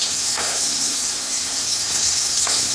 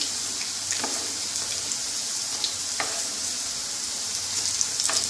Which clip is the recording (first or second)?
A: second